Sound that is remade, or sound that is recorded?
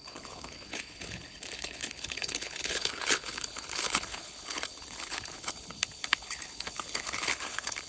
remade